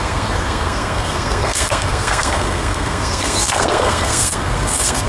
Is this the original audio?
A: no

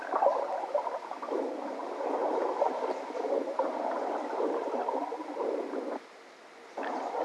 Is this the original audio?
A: yes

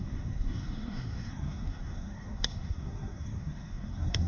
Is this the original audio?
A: no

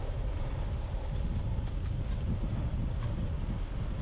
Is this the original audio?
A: yes